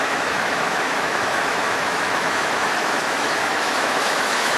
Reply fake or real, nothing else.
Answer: fake